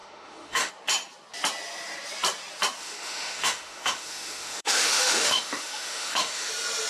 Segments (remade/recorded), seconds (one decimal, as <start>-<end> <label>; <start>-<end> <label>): 0.0-0.7 remade; 0.7-2.8 recorded; 2.8-6.5 remade; 6.5-6.9 recorded